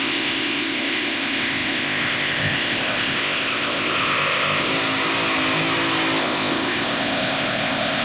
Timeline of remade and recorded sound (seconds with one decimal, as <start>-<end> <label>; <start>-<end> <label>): 0.0-4.7 remade; 4.7-6.2 recorded; 6.2-8.0 remade